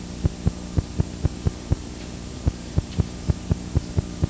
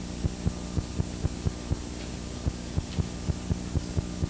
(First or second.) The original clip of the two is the second